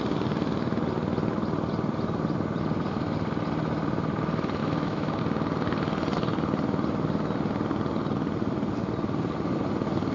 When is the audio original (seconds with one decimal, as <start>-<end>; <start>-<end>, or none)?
0.0-4.6; 5.2-10.1